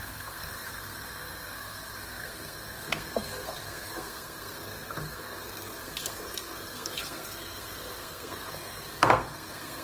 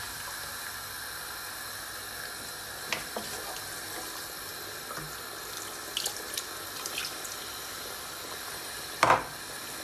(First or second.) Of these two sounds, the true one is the second